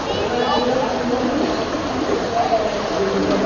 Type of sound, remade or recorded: recorded